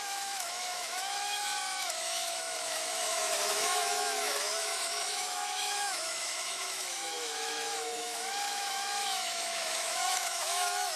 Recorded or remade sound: remade